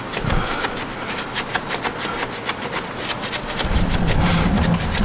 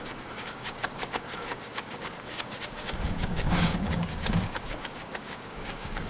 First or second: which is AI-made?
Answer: second